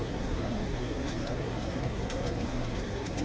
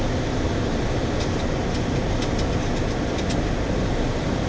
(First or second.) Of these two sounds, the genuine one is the second